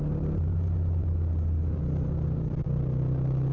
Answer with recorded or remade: recorded